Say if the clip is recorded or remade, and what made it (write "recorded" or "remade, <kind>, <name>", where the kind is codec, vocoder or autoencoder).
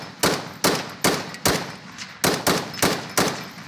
recorded